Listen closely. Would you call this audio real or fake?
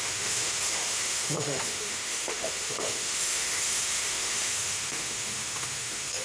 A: fake